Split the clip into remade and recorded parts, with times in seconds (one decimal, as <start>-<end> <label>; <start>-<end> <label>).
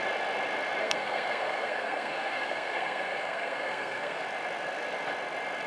0.0-0.8 recorded; 0.8-4.2 remade; 4.2-5.7 recorded